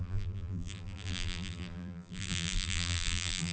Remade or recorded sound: remade